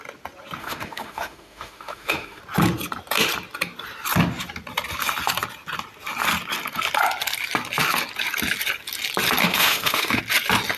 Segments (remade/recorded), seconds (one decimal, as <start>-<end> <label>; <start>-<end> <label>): 0.0-0.6 recorded; 0.6-2.4 remade; 2.4-9.4 recorded; 9.4-10.2 remade; 10.2-10.8 recorded